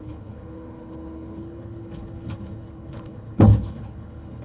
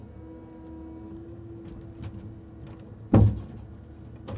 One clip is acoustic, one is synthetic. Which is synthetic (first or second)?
first